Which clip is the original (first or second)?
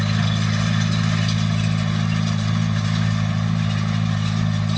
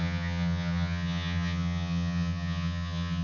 first